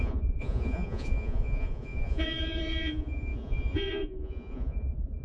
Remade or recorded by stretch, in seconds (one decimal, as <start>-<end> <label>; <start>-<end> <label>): 0.0-5.2 remade